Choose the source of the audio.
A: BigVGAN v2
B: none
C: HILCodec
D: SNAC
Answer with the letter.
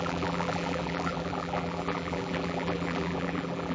A